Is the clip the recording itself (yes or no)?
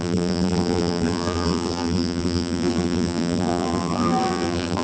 no